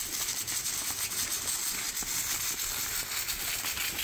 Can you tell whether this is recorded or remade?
recorded